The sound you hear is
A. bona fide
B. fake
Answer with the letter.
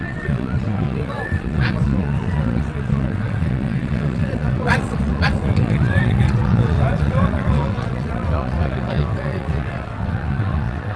B